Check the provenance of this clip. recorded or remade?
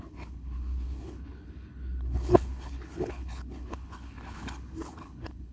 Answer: remade